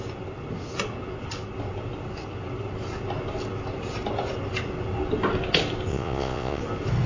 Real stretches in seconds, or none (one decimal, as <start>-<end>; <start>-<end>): 0.0-5.9; 6.6-7.1